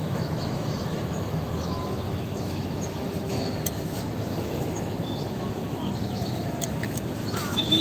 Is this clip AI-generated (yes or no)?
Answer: yes